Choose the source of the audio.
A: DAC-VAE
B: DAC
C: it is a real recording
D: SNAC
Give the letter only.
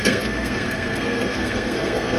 D